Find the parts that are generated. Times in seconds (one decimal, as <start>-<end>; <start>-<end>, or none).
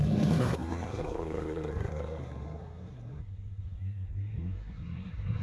0.0-5.4